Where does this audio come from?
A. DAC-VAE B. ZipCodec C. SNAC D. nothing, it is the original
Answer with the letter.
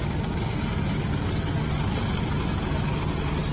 D